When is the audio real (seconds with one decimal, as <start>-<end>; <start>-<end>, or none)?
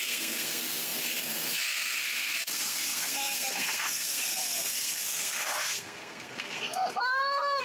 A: none